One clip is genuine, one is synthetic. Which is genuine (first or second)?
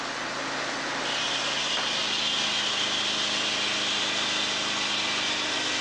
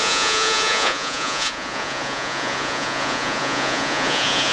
first